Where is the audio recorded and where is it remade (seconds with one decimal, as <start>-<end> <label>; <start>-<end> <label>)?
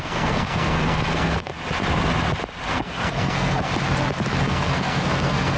0.0-1.5 remade; 1.5-2.7 recorded; 2.7-3.7 remade; 3.7-4.4 recorded; 4.4-5.6 remade